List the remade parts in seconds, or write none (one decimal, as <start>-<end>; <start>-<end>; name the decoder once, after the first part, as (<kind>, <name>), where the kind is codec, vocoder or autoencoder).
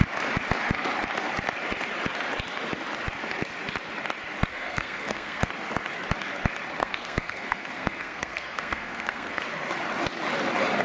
4.5-5.5 (codec, SNAC); 6.8-9.4